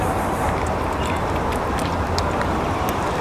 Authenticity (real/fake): real